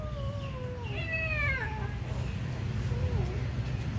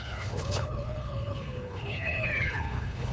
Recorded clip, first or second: first